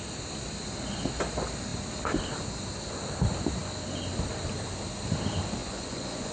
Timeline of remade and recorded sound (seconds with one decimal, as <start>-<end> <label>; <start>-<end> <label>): 0.0-5.6 recorded; 5.6-6.3 remade